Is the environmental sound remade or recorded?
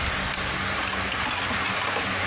recorded